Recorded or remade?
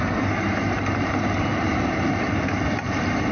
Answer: remade